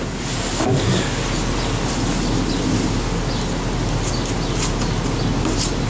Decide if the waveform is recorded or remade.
recorded